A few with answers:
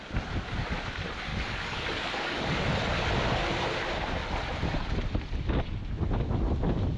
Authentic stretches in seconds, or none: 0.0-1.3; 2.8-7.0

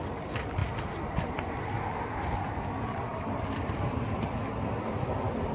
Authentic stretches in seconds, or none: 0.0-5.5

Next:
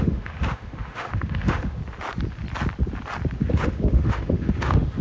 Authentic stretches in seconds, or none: 1.8-3.5

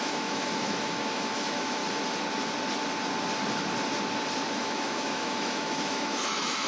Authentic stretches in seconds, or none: 1.8-4.5

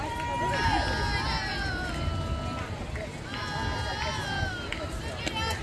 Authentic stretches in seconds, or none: 0.0-5.6